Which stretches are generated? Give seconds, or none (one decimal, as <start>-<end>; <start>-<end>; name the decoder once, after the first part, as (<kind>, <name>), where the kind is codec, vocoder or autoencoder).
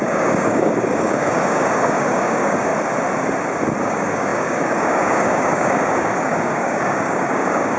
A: 0.0-2.7 (codec, DAC); 3.8-7.8